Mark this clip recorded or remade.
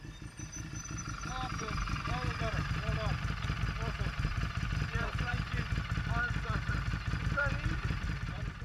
remade